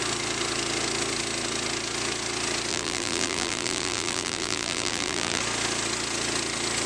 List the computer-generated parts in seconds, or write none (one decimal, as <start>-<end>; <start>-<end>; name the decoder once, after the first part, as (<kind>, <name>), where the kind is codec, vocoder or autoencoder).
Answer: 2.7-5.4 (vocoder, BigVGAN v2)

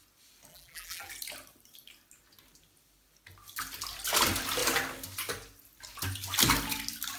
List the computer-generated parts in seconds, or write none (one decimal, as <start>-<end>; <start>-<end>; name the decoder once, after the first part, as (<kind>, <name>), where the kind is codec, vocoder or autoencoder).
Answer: 0.5-1.1 (vocoder, BigVGAN v2)

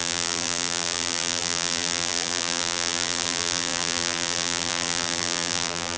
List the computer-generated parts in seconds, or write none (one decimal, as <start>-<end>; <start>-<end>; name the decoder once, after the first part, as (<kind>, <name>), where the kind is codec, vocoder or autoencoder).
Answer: 0.0-6.0 (vocoder, BigVGAN v2)

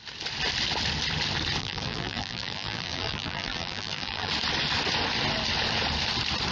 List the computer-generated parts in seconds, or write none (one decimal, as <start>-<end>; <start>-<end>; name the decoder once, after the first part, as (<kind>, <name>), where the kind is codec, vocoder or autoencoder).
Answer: 1.6-4.3 (vocoder, BigVGAN v2)

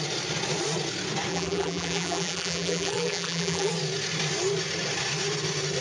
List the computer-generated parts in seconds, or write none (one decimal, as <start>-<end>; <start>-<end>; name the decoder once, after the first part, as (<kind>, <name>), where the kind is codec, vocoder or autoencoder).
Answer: 1.3-3.7 (vocoder, BigVGAN v2)

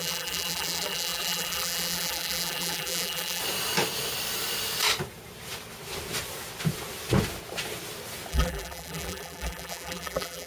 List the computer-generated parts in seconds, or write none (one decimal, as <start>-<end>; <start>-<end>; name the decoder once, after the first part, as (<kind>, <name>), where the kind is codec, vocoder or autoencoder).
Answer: 0.0-3.4 (vocoder, BigVGAN v2); 8.3-10.5

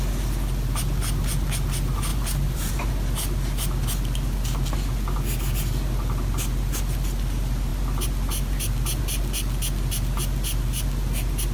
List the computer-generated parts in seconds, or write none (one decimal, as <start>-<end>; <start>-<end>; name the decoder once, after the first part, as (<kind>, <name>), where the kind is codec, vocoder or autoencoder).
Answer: 2.1-2.9 (vocoder, BigVGAN v2)